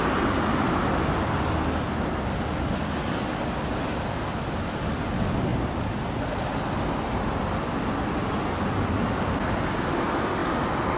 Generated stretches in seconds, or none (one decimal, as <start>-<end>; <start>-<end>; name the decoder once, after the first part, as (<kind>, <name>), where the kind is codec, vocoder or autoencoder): none